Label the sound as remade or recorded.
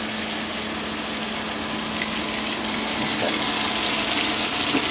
recorded